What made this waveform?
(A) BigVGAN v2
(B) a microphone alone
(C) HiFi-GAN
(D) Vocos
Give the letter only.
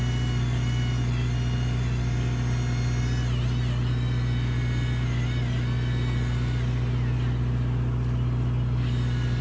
B